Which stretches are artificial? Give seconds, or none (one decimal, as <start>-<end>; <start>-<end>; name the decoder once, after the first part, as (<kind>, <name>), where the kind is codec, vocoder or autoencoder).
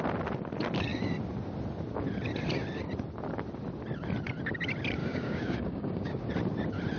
5.0-6.3 (codec, DAC)